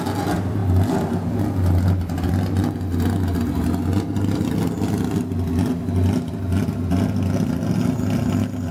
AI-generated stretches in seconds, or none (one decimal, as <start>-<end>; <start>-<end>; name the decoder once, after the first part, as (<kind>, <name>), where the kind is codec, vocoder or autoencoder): none